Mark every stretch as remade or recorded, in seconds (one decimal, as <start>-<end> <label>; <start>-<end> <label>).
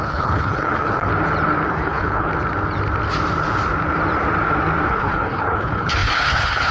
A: 0.0-1.1 remade; 1.1-1.7 recorded; 1.7-2.3 remade; 2.3-4.9 recorded; 4.9-6.7 remade